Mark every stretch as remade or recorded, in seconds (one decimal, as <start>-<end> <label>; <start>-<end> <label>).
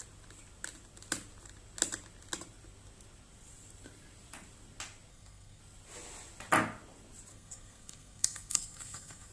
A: 0.0-5.1 recorded; 5.1-5.6 remade; 5.6-7.3 recorded; 7.3-9.3 remade